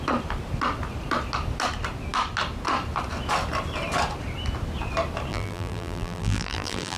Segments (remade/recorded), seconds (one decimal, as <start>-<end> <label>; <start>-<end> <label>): 0.0-5.3 recorded; 5.3-7.0 remade